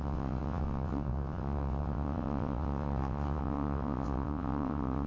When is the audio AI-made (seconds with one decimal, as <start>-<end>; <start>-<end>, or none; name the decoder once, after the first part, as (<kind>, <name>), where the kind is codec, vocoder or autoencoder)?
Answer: 0.0-5.1 (vocoder, WaveNeXt)